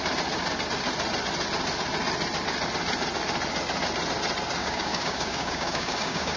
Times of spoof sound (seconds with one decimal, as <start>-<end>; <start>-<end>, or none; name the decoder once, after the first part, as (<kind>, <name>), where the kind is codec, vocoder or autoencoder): 4.6-6.4 (codec, DAC)